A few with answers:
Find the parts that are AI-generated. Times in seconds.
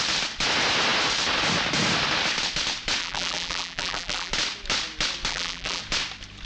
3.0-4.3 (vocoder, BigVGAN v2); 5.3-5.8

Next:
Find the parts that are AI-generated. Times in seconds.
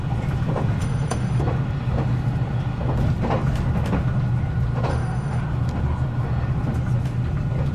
0.8-1.4 (autoencoder, DAC-VAE); 4.9-5.4